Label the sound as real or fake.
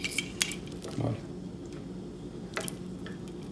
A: real